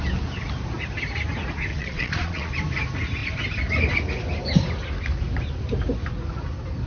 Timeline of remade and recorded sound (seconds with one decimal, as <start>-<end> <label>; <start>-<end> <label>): 0.0-1.7 recorded; 1.7-2.5 remade; 2.5-6.9 recorded